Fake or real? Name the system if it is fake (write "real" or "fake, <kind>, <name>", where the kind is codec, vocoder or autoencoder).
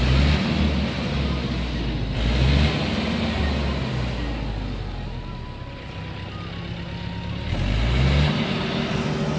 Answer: real